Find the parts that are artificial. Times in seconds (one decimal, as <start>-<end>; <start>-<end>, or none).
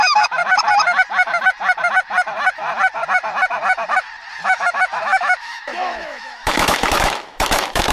0.0-0.4; 4.4-7.9